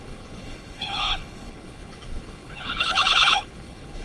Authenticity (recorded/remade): remade